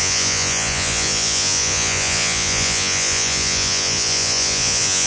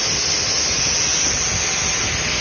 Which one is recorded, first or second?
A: second